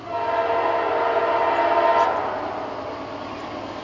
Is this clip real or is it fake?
real